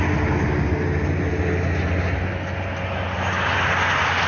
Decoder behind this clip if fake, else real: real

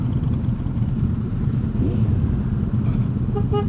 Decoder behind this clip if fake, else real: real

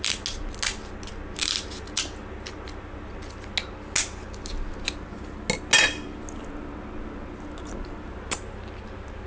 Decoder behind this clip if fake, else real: real